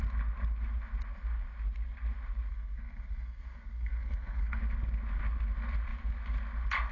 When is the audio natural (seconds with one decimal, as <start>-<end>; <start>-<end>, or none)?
0.0-2.5; 4.6-6.9